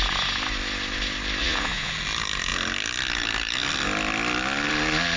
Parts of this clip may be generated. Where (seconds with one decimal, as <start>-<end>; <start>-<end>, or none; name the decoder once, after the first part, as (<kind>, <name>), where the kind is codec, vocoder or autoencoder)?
1.4-1.9 (vocoder, Vocos)